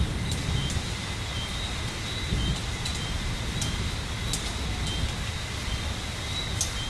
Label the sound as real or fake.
real